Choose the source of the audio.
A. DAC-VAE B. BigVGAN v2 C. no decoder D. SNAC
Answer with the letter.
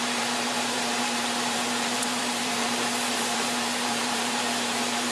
B